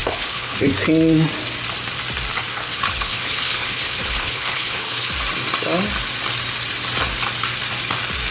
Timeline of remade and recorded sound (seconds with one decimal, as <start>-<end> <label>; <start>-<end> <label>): 0.0-0.7 remade; 0.7-2.5 recorded; 2.5-5.1 remade; 5.1-8.3 recorded